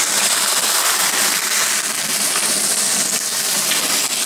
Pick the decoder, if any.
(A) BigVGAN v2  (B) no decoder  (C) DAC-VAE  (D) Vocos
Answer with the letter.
B